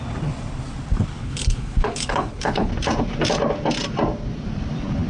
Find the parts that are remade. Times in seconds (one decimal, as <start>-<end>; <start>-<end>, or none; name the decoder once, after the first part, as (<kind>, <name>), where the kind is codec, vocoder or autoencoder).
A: 1.2-2.7 (codec, HILCodec)